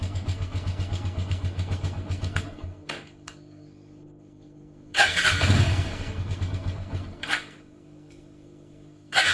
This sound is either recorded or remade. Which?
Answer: remade